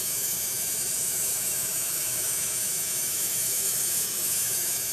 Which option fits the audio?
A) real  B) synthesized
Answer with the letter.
B